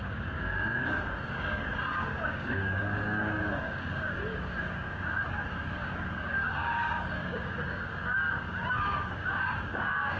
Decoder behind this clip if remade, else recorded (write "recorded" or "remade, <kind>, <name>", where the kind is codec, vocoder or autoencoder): remade, codec, DAC